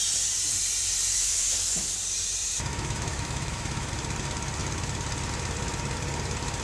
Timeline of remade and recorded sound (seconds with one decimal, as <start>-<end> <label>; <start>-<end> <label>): 0.0-1.1 recorded; 1.1-1.9 remade; 1.9-2.7 recorded; 2.7-3.9 remade; 3.9-6.6 recorded